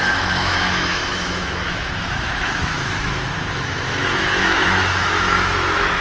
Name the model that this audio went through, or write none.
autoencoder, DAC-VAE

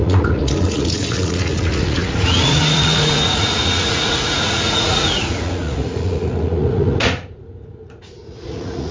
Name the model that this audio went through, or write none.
vocoder, Vocos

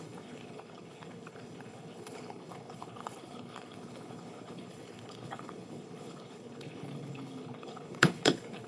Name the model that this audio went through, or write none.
codec, HILCodec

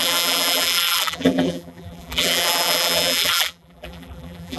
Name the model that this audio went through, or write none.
vocoder, BigVGAN v2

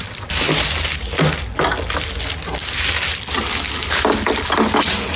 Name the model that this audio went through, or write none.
none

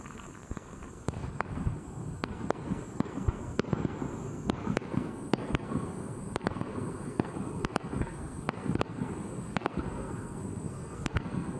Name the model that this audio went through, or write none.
codec, SNAC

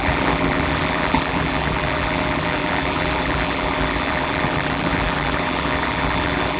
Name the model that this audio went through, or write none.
vocoder, BigVGAN v2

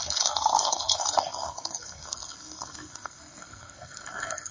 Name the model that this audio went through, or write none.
codec, SNAC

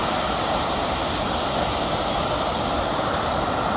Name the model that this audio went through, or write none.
none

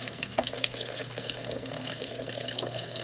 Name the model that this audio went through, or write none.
codec, SNAC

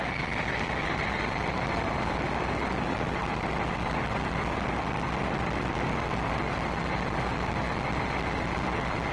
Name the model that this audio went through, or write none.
none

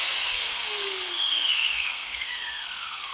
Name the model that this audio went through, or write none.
codec, SNAC